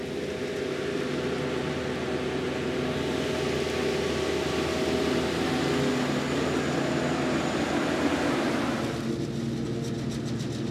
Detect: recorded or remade recorded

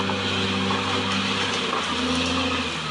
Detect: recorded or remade recorded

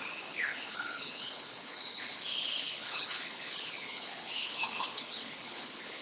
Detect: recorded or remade remade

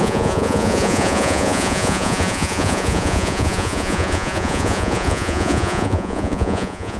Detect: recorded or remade remade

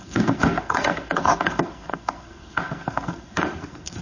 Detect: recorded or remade remade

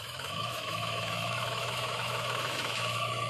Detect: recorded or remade remade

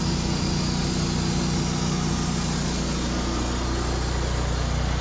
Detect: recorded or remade recorded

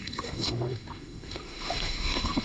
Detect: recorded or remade remade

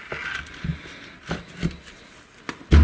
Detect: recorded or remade recorded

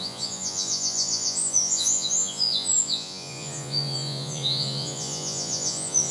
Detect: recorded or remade remade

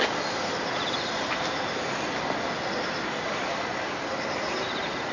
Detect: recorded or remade recorded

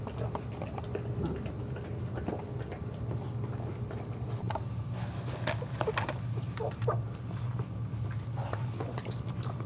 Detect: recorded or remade recorded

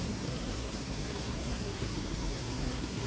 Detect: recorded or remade remade